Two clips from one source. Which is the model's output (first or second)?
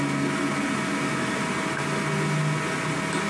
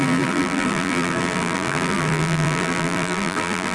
second